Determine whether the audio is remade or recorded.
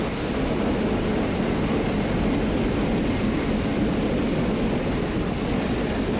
recorded